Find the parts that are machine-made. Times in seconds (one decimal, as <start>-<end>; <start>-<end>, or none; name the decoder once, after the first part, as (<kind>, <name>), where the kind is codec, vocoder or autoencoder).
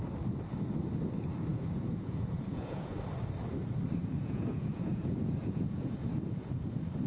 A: 1.5-3.0 (vocoder, Vocos); 4.0-6.6